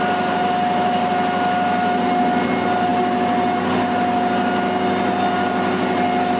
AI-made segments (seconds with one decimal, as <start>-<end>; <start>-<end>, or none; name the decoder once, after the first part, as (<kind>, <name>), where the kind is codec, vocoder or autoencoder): none